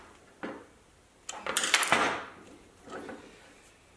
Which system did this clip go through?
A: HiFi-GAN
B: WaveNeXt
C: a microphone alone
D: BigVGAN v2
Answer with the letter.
C